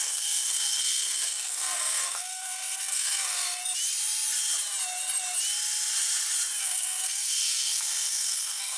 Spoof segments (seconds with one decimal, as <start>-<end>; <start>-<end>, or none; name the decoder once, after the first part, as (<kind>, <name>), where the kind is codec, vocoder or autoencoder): 0.0-3.6 (codec, SNAC); 6.6-8.8